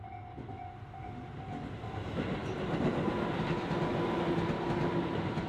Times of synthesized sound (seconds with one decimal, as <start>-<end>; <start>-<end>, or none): none